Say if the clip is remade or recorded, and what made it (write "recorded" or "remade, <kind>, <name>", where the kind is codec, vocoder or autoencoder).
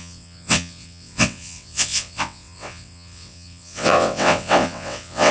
remade, vocoder, WaveNeXt